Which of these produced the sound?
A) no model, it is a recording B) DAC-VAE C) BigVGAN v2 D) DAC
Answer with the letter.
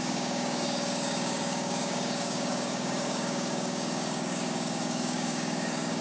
D